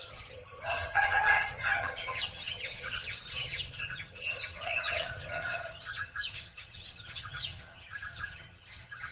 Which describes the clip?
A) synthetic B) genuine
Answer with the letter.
A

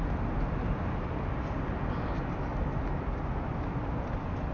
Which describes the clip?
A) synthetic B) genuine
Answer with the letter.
B